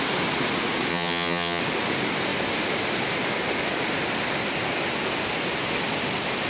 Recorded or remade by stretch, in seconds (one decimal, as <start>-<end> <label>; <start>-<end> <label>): 0.0-0.9 recorded; 0.9-1.6 remade; 1.6-6.5 recorded